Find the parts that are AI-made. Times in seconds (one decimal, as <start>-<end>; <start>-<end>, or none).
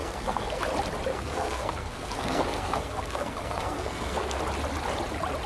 0.0-0.6; 1.1-4.4